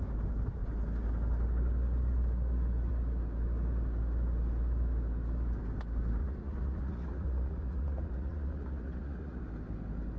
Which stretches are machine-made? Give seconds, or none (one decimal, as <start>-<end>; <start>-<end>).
6.2-9.4

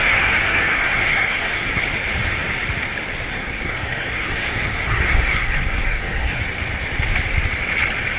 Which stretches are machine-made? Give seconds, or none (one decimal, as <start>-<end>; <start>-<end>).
0.0-1.8; 3.3-6.4